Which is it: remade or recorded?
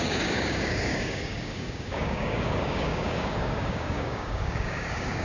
remade